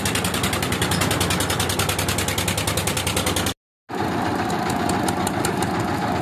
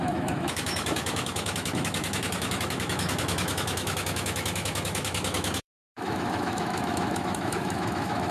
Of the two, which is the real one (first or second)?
first